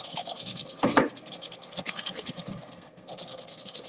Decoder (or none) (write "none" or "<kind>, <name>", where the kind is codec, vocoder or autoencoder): codec, SNAC